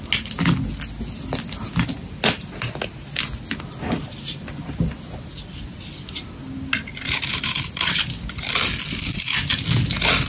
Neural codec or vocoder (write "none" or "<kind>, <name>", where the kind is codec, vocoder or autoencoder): none